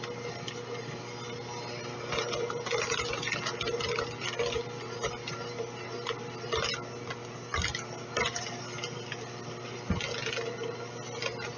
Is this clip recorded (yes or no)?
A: yes